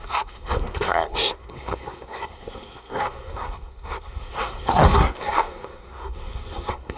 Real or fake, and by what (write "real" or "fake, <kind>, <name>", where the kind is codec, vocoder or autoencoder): fake, codec, SNAC